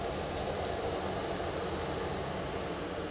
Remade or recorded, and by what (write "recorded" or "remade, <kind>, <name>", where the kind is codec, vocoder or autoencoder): recorded